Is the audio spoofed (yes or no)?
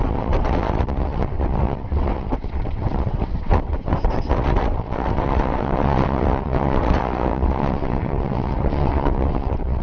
yes